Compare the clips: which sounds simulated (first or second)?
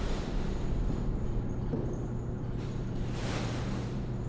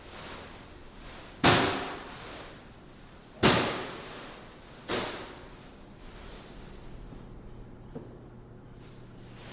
first